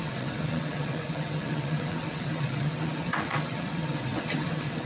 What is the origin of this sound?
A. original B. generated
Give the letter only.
B